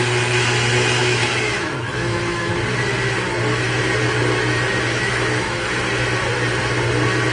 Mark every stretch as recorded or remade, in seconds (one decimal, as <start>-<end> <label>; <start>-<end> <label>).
0.0-1.0 recorded; 1.0-2.5 remade; 2.5-4.9 recorded; 4.9-5.8 remade; 5.8-7.3 recorded